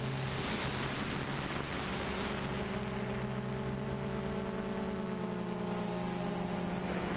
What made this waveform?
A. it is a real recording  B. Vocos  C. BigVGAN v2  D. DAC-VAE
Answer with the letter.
A